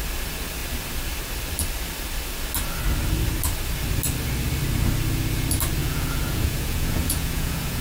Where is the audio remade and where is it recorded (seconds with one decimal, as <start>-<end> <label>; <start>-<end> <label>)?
0.0-5.8 recorded; 5.8-7.8 remade